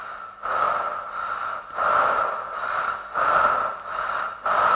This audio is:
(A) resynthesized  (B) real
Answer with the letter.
B